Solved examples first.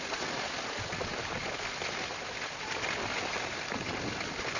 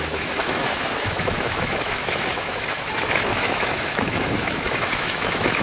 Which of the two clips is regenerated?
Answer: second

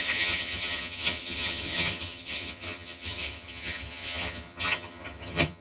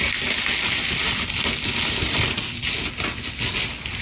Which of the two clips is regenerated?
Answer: first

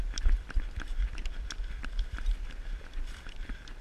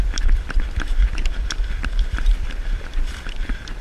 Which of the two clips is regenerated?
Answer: second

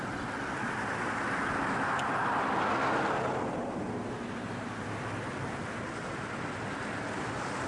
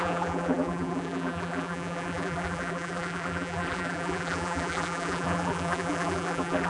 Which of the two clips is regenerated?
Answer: second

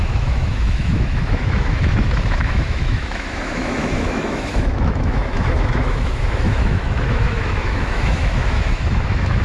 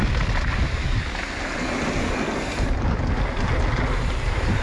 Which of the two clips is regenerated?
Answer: first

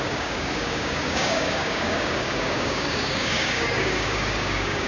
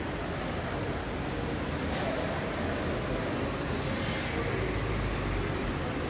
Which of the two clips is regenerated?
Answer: first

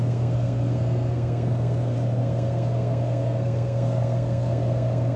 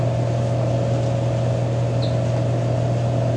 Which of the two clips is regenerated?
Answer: first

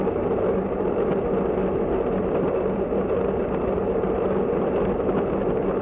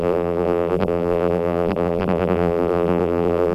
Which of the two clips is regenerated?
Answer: second